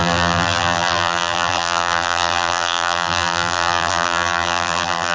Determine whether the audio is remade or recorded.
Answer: remade